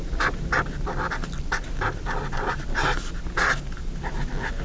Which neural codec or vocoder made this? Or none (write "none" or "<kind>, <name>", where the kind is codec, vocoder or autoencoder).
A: none